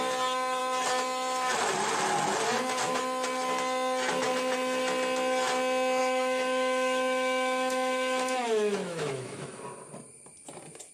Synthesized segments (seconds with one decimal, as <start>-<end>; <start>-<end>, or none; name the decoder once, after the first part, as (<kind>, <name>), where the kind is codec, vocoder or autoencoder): 6.0-9.6 (autoencoder, DAC-VAE)